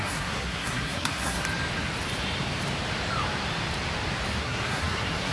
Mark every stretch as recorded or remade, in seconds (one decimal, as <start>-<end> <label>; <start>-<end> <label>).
0.0-1.4 remade; 1.4-4.4 recorded; 4.4-5.3 remade